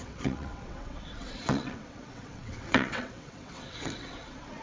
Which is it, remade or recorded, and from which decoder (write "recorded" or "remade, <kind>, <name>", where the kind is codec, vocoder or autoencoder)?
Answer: remade, vocoder, WaveNeXt